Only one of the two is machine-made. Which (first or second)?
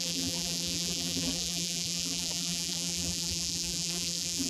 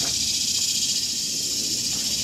first